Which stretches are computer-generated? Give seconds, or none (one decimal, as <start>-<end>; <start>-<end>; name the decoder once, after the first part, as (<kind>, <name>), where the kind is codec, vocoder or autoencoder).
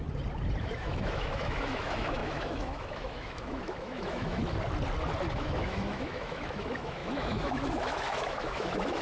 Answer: 0.6-4.4 (autoencoder, DAC-VAE); 5.3-9.0